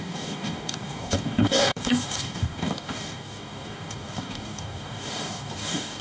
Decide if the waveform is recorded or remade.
remade